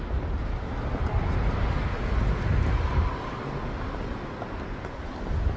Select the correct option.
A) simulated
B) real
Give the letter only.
B